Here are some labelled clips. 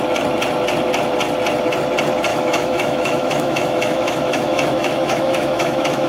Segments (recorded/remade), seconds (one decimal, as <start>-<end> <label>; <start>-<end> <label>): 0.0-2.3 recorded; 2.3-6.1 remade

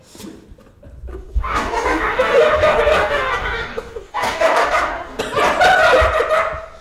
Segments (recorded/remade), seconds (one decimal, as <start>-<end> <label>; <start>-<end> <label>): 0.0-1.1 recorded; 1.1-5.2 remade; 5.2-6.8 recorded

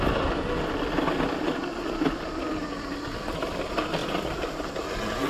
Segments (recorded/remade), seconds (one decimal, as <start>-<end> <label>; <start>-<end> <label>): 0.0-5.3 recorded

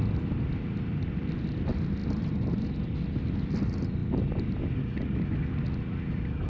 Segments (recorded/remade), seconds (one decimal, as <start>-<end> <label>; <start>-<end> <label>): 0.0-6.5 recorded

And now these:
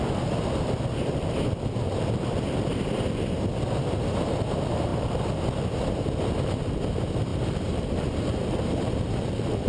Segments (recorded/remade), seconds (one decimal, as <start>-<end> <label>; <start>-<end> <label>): 0.0-7.3 recorded; 7.3-9.7 remade

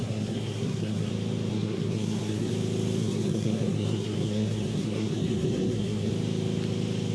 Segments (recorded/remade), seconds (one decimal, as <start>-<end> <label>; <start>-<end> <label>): 0.0-1.1 remade; 1.1-1.5 recorded; 1.5-2.5 remade; 2.5-3.0 recorded; 3.0-6.1 remade; 6.1-7.1 recorded